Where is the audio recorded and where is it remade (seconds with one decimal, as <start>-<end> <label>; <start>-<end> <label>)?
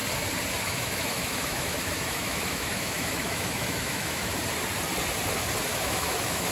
0.0-0.6 recorded; 0.6-4.3 remade; 4.3-5.7 recorded; 5.7-6.5 remade